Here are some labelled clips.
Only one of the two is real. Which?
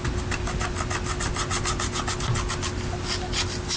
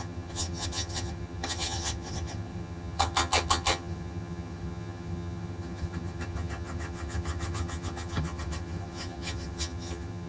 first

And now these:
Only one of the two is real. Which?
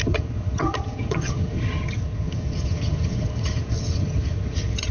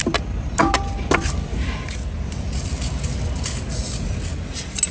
second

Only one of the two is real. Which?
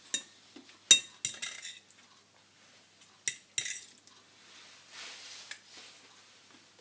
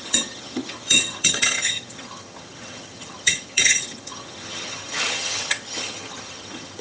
first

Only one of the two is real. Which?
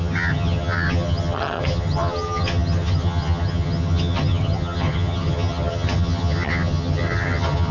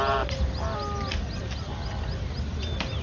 second